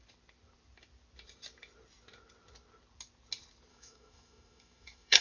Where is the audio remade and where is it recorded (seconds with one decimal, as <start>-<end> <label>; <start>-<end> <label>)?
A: 0.0-3.7 recorded; 3.7-5.2 remade